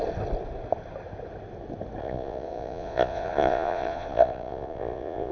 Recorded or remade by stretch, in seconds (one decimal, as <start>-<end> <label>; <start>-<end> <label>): 0.0-2.0 recorded; 2.0-5.3 remade